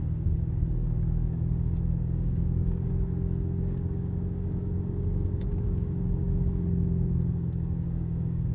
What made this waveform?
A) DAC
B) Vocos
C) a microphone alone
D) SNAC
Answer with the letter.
A